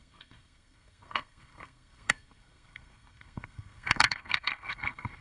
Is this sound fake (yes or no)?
yes